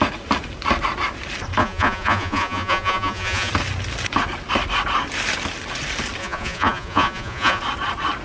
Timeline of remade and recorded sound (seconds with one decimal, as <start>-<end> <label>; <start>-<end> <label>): 0.0-1.6 recorded; 1.6-3.5 remade; 3.5-6.2 recorded; 6.2-7.6 remade; 7.6-8.2 recorded